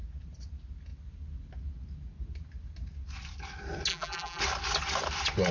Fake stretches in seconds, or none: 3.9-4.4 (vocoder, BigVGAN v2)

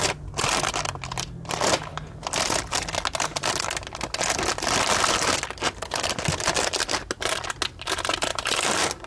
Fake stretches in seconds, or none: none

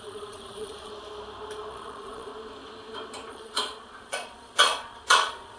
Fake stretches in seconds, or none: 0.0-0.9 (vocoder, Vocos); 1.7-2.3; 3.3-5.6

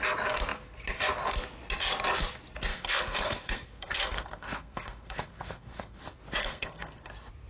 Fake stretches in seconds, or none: 2.7-6.0 (codec, SNAC); 6.4-7.0

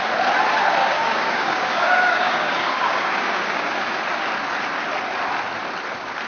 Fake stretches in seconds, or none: 0.8-4.0 (codec, DAC)

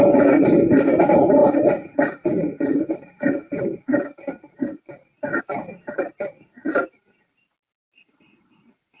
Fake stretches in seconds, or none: none

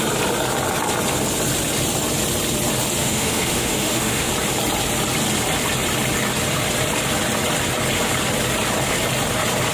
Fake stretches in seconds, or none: 3.0-4.3 (autoencoder, DAC-VAE)